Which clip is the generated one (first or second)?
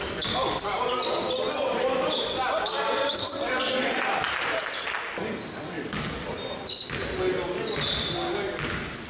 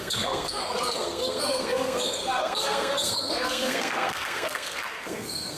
second